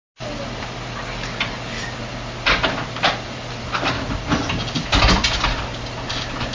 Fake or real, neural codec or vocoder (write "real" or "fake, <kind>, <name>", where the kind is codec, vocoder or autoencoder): real